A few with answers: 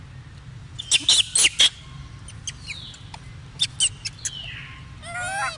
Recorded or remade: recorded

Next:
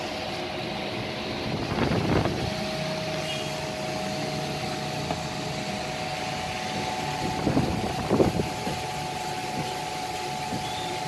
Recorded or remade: recorded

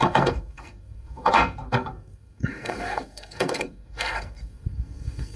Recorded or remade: remade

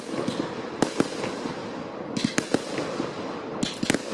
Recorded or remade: recorded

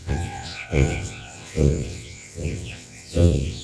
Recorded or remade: remade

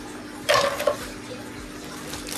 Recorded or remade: recorded